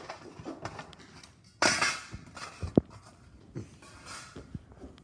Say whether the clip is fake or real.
real